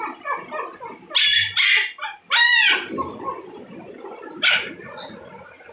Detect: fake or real real